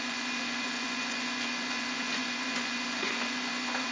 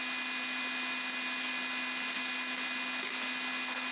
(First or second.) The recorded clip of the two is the second